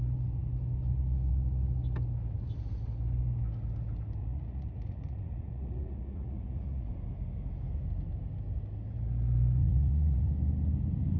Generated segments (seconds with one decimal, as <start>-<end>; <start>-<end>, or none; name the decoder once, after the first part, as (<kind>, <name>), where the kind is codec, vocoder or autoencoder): 4.2-6.9 (vocoder, Vocos); 9.6-10.3